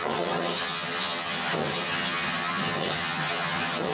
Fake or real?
fake